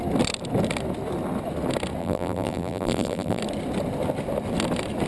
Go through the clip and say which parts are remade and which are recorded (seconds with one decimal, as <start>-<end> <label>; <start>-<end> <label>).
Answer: 0.0-2.0 recorded; 2.0-3.4 remade; 3.4-5.1 recorded